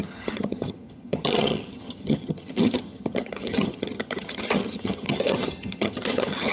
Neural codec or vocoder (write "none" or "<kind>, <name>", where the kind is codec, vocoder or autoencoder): vocoder, HiFi-GAN